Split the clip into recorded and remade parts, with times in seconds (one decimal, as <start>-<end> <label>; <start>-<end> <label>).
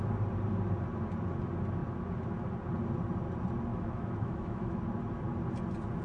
0.0-3.7 recorded; 3.7-4.8 remade; 4.8-6.0 recorded